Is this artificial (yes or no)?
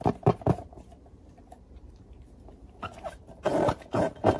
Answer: yes